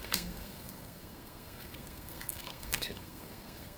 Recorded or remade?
remade